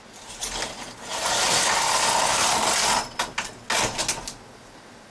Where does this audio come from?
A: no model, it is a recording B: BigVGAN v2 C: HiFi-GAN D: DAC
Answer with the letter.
A